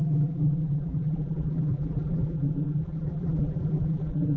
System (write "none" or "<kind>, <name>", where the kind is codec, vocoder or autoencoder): vocoder, BigVGAN v2